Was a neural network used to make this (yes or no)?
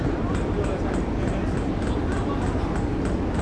no